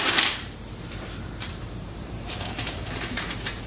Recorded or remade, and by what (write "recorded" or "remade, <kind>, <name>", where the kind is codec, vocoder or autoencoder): remade, vocoder, BigVGAN v2